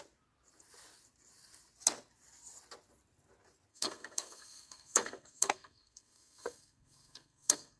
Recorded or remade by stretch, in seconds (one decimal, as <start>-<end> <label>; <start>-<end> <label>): 0.0-3.7 recorded; 3.7-7.8 remade